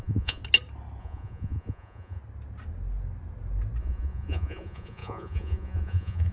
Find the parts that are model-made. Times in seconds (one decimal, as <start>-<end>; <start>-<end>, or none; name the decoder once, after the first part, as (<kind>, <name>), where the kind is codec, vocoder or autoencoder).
0.0-0.4 (vocoder, Vocos); 1.0-2.2; 3.8-6.3